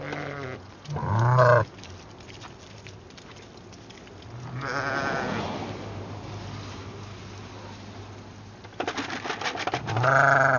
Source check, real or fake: real